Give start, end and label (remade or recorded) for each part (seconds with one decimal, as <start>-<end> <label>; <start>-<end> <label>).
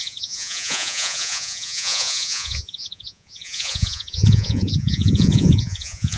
0.0-6.2 remade